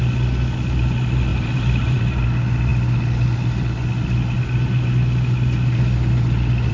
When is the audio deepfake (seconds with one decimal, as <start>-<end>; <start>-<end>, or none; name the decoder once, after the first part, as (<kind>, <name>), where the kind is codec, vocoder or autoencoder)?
1.3-2.2 (vocoder, BigVGAN v2)